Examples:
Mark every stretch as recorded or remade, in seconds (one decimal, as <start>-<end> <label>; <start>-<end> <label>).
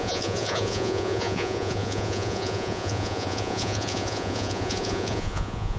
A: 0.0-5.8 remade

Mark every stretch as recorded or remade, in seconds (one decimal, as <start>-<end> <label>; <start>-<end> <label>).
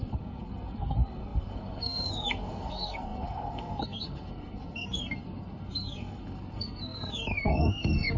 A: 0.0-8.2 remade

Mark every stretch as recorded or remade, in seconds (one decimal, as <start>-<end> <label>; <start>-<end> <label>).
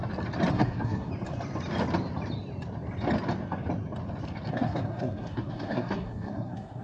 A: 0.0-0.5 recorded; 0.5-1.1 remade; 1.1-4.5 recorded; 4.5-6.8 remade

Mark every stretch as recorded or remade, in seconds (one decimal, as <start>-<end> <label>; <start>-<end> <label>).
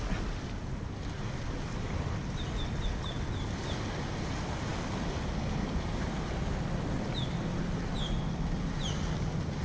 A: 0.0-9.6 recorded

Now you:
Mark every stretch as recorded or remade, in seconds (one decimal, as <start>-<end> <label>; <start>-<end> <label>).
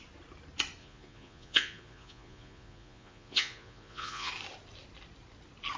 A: 0.0-0.8 recorded; 0.8-4.3 remade; 4.3-5.8 recorded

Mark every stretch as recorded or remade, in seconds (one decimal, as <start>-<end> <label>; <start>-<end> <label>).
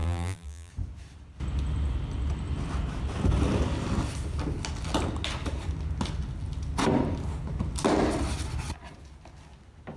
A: 0.0-0.7 remade; 0.7-10.0 recorded